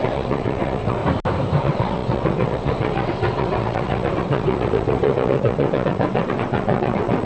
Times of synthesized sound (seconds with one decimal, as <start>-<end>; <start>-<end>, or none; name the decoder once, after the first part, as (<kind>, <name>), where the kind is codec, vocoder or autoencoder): 0.0-1.0 (vocoder, WaveNeXt); 1.6-7.3